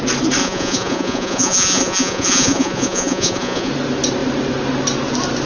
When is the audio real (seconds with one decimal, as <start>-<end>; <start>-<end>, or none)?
0.0-0.4; 3.7-5.5